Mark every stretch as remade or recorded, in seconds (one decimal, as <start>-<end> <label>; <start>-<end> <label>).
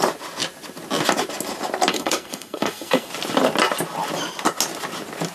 0.0-1.9 recorded; 1.9-3.1 remade; 3.1-5.3 recorded